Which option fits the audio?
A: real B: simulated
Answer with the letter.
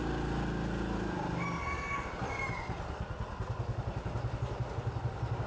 A